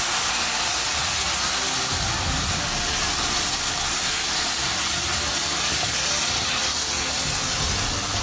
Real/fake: real